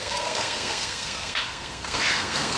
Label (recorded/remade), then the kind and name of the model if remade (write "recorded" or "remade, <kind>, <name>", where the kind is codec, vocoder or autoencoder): remade, codec, SNAC